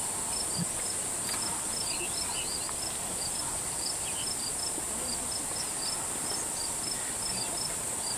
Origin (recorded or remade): recorded